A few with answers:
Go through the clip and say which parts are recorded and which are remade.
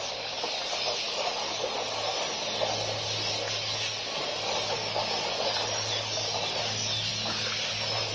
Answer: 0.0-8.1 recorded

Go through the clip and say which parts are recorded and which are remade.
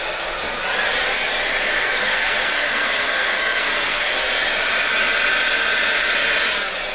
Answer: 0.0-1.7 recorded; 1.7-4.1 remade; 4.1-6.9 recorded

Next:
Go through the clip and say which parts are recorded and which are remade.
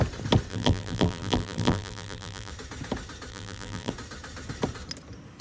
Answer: 0.0-0.5 recorded; 0.5-2.5 remade; 2.5-3.3 recorded; 3.3-3.9 remade; 3.9-5.4 recorded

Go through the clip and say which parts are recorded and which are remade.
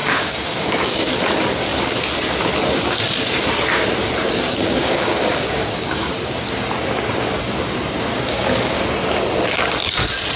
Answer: 0.0-1.1 remade; 1.1-4.5 recorded; 4.5-6.1 remade; 6.1-8.1 recorded; 8.1-8.8 remade; 8.8-10.4 recorded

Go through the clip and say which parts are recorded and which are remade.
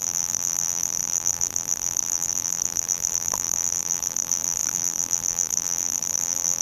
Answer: 0.0-6.6 remade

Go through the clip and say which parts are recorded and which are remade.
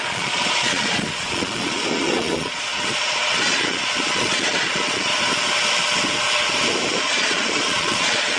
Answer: 0.0-5.1 remade; 5.1-6.9 recorded; 6.9-8.4 remade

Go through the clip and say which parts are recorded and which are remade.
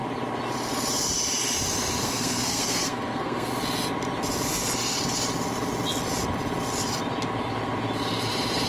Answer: 0.0-2.0 recorded; 2.0-3.5 remade; 3.5-8.7 recorded